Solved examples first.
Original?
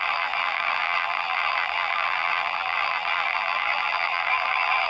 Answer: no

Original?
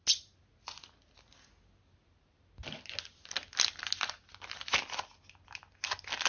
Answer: yes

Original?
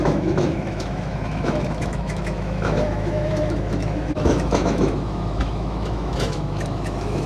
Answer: no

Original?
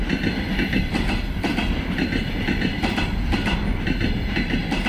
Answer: yes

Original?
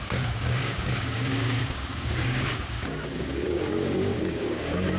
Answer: no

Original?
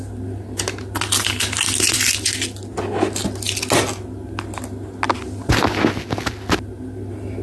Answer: yes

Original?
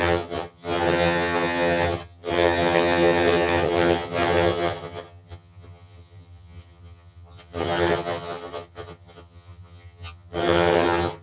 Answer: no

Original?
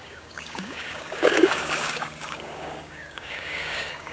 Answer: no